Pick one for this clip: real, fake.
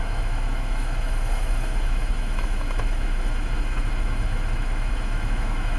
fake